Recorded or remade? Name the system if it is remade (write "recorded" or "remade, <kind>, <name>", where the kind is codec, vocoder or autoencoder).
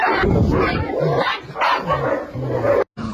recorded